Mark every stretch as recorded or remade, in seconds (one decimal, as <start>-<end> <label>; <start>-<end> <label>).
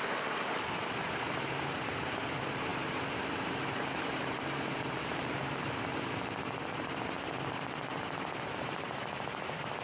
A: 0.0-9.8 remade